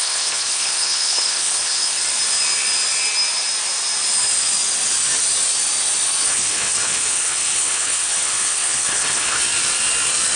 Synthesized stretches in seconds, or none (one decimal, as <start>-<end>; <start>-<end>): 0.0-2.0; 6.3-9.4